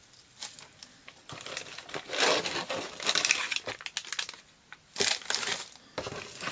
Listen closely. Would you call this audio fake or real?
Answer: real